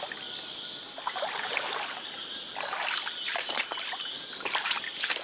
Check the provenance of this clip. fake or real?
real